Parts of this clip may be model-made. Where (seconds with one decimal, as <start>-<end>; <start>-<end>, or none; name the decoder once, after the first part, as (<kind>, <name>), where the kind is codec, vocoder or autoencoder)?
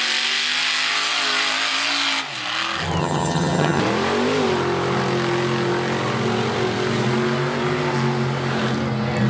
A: 3.0-3.8 (vocoder, HiFi-GAN)